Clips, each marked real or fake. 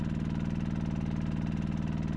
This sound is real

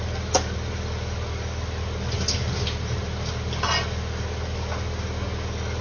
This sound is real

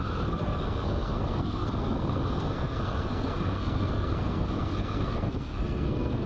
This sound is fake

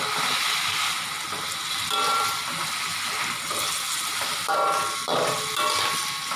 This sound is real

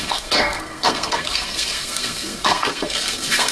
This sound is fake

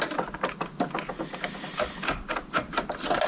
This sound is real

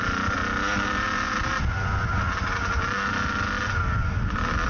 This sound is real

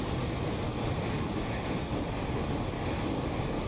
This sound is real